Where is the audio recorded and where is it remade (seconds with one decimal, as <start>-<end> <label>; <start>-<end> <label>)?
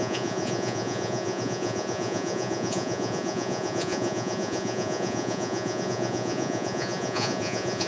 0.0-7.9 remade